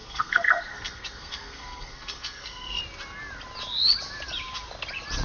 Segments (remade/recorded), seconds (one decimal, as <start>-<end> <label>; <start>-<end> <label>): 0.0-2.8 remade; 2.8-5.2 recorded